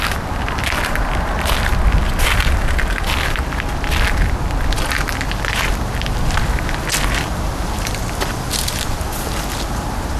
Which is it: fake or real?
real